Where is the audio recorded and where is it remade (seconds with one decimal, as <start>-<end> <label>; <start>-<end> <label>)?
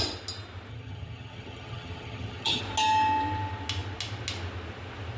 0.0-0.7 recorded; 0.7-2.6 remade; 2.6-5.2 recorded